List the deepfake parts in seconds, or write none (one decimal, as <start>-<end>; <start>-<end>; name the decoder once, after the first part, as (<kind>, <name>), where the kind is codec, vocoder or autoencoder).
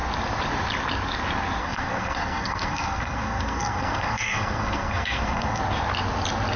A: 1.6-5.6 (codec, SNAC)